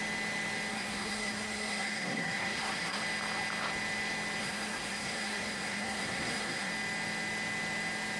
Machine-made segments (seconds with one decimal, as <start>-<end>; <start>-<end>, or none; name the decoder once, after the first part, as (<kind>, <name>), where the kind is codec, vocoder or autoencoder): 0.7-3.0 (codec, SNAC); 4.4-6.7